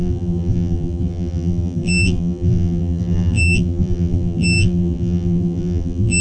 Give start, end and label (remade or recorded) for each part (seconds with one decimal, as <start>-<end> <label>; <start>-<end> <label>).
0.0-6.2 remade